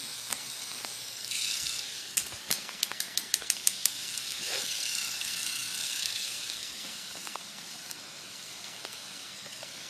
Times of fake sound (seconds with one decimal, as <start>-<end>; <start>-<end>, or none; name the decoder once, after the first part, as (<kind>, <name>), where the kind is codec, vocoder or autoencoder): 0.0-9.9 (codec, SNAC)